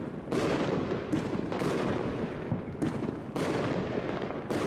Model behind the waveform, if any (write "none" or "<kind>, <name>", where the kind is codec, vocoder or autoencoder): none